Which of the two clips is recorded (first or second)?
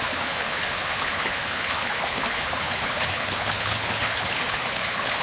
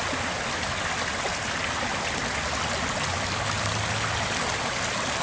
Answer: second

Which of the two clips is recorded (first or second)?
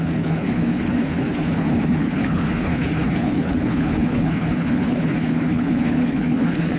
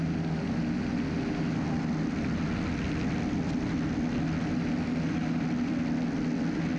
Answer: second